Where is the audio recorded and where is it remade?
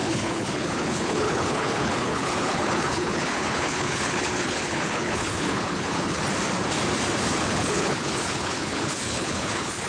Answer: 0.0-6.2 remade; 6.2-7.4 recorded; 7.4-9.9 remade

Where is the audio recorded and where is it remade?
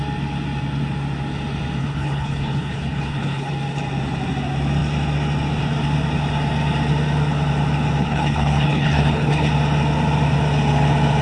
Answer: 0.0-1.8 recorded; 1.8-3.5 remade; 3.5-8.0 recorded; 8.0-9.5 remade; 9.5-11.2 recorded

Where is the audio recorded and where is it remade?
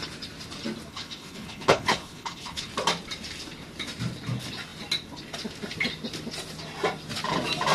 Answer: 0.0-0.9 recorded; 0.9-2.7 remade; 2.7-7.7 recorded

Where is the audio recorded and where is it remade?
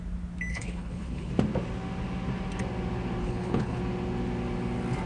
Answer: 0.0-0.5 recorded; 0.5-1.3 remade; 1.3-3.2 recorded; 3.2-3.8 remade; 3.8-5.1 recorded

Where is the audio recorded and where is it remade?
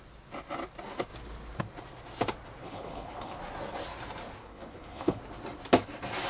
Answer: 0.0-2.6 recorded; 2.6-3.4 remade; 3.4-4.4 recorded; 4.4-5.2 remade; 5.2-6.3 recorded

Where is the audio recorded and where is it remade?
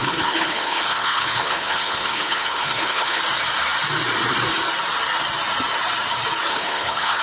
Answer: 0.0-3.2 remade; 3.2-6.5 recorded; 6.5-7.2 remade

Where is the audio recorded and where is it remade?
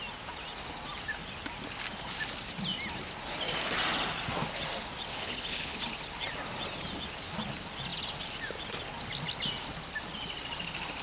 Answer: 0.0-5.1 recorded; 5.1-5.8 remade; 5.8-11.0 recorded